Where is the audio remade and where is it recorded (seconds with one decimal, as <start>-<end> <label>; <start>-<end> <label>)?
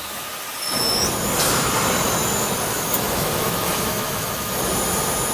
0.0-2.7 recorded; 2.7-4.5 remade; 4.5-5.3 recorded